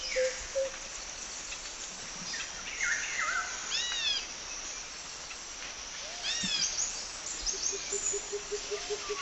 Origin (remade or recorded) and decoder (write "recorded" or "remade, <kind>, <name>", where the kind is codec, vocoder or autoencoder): recorded